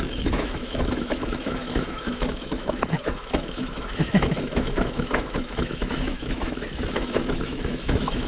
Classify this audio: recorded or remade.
remade